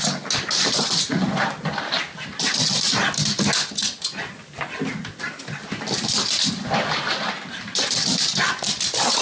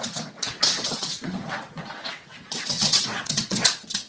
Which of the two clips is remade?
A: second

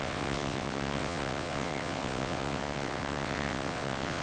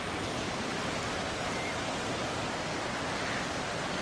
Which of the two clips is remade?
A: first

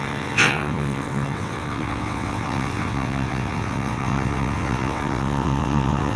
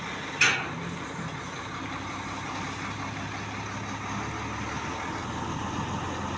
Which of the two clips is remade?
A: first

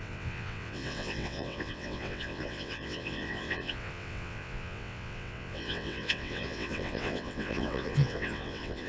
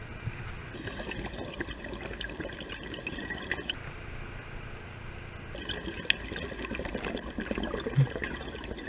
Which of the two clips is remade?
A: first